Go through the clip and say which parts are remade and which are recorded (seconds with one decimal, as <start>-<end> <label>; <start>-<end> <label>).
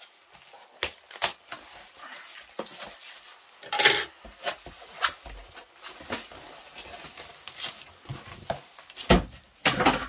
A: 0.0-10.1 recorded